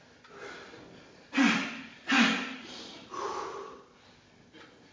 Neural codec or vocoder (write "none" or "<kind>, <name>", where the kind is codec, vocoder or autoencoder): none